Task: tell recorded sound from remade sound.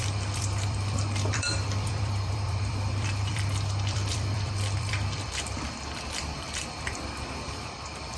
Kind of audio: remade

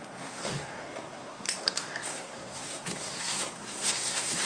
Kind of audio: remade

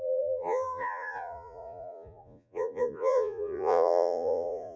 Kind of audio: remade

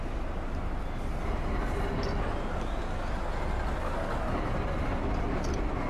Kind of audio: recorded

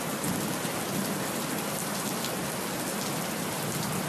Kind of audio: recorded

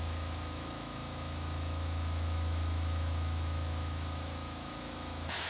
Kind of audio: remade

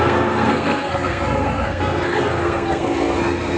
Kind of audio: remade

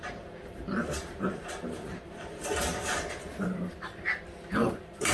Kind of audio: remade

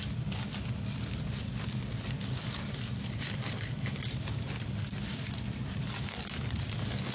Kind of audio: recorded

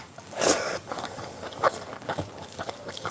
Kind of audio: remade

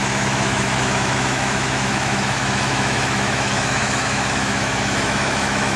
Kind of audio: remade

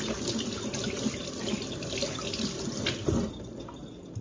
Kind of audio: recorded